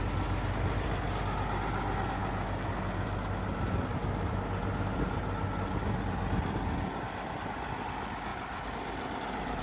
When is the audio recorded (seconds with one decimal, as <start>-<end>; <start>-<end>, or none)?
0.0-8.3